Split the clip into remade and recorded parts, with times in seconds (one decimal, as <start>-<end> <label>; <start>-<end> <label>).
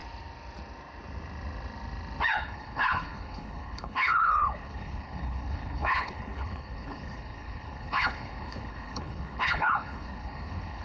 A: 0.0-2.3 recorded; 2.3-10.8 remade